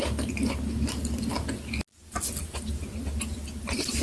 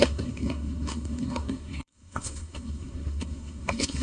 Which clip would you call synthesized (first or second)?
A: second